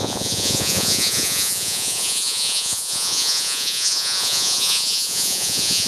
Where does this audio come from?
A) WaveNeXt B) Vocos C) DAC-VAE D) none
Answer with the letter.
B